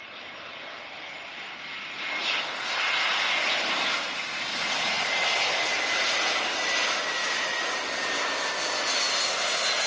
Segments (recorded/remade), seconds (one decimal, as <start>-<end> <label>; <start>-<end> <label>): 0.0-7.2 recorded; 7.2-7.7 remade; 7.7-9.9 recorded